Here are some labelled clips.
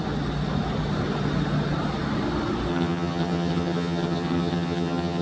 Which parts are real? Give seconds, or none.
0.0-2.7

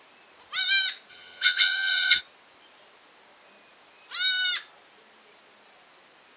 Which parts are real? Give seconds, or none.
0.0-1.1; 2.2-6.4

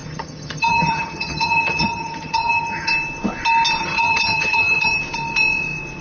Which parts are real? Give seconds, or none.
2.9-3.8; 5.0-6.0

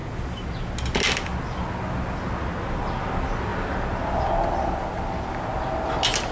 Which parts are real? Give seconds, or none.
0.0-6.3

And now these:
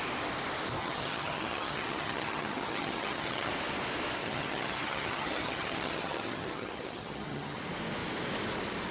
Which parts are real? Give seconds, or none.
0.0-0.8; 3.5-4.2; 7.6-8.9

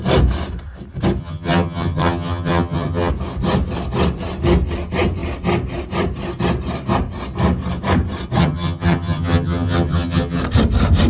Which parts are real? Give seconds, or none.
0.0-1.2; 3.1-8.4; 10.4-11.1

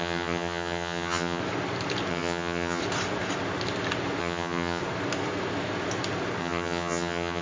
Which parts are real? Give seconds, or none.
1.4-2.1; 2.8-4.2; 4.8-6.4